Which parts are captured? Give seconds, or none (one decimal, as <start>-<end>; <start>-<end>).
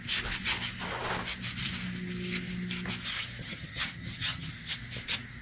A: 0.0-3.4; 4.5-5.4